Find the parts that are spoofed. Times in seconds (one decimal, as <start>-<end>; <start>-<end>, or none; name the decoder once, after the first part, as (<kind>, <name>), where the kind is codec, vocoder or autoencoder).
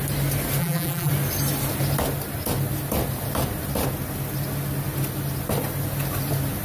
0.6-1.1 (vocoder, BigVGAN v2)